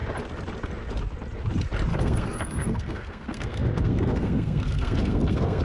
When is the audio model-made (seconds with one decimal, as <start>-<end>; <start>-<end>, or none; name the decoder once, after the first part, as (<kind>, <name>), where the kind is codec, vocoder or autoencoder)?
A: 1.9-5.6 (codec, SNAC)